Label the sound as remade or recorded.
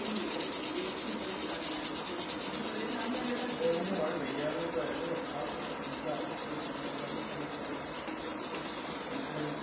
recorded